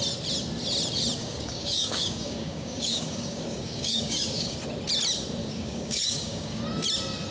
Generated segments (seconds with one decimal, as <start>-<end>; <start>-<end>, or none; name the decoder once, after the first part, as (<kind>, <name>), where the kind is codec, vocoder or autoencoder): 1.2-4.6 (codec, DAC); 5.4-6.6